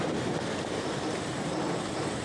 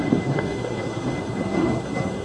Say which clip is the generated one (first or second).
second